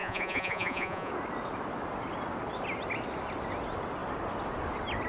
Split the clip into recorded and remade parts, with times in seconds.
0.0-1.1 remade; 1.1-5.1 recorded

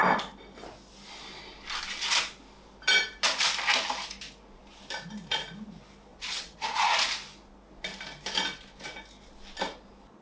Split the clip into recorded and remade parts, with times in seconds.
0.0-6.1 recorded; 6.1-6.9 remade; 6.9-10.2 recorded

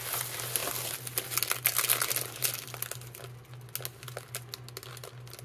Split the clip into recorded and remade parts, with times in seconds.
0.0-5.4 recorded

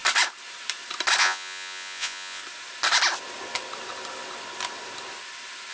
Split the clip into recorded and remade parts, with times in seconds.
0.0-1.2 recorded; 1.2-2.4 remade; 2.4-5.7 recorded